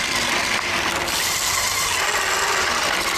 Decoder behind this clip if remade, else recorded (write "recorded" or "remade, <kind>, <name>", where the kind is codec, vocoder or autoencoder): recorded